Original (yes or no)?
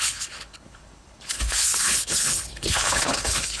no